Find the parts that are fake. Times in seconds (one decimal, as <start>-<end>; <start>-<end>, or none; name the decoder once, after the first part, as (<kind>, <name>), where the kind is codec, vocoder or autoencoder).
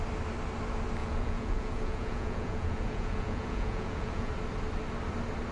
1.0-4.3 (vocoder, Vocos)